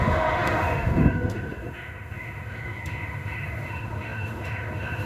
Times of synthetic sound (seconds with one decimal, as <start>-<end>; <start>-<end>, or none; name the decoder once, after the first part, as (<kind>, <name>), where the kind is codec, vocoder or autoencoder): 0.0-5.1 (autoencoder, DAC-VAE)